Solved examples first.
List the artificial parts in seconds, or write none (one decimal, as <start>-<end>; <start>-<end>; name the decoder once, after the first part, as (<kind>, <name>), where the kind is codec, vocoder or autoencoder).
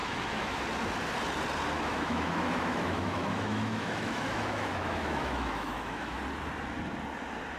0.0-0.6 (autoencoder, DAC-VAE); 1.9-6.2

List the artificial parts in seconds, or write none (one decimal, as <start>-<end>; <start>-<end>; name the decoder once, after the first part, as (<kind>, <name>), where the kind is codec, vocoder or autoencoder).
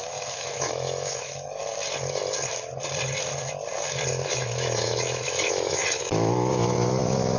0.0-1.6 (autoencoder, DAC-VAE); 4.3-7.4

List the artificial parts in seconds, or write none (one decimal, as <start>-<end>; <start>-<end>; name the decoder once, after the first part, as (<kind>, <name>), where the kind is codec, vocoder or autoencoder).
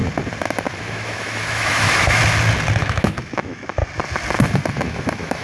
0.8-2.2 (autoencoder, DAC-VAE); 2.8-3.8; 4.7-5.4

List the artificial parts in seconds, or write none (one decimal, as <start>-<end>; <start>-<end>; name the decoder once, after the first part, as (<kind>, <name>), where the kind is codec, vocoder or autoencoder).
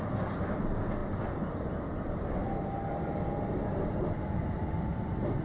none